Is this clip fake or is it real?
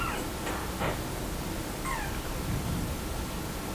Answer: real